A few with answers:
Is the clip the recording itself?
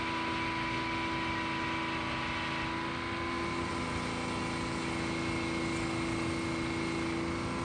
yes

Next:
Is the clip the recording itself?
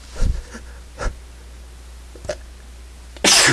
yes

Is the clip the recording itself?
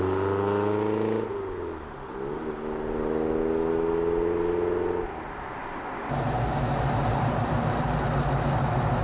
yes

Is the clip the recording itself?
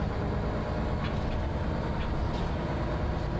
yes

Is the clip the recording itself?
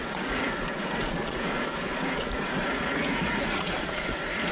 no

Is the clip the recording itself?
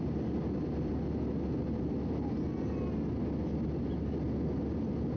yes